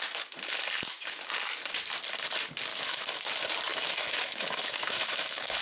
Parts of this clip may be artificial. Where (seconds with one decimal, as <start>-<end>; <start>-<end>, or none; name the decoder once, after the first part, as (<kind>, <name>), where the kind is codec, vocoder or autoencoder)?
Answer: 2.7-3.2 (autoencoder, DAC-VAE); 3.7-5.6